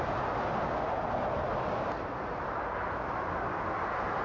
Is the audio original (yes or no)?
yes